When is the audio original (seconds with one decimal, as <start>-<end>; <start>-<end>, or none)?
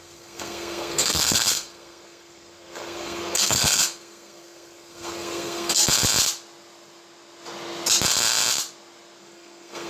5.8-9.2